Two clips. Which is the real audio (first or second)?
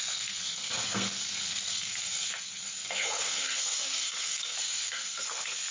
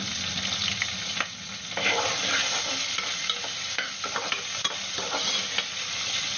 second